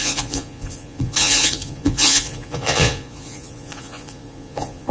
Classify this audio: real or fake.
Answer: fake